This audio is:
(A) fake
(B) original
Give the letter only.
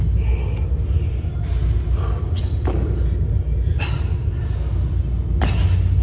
B